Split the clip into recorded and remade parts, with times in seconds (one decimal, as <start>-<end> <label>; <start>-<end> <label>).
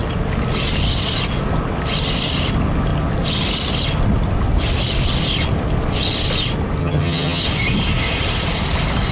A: 0.0-6.8 recorded; 6.8-7.4 remade; 7.4-9.1 recorded